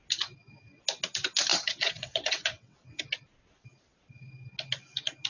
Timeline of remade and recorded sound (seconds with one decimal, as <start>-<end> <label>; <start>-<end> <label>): 0.0-1.5 recorded; 1.5-3.0 remade; 3.0-5.3 recorded